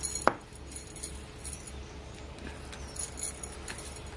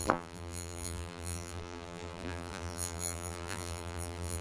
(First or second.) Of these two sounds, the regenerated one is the second